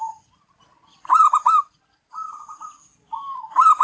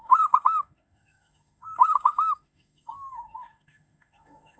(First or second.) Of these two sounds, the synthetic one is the second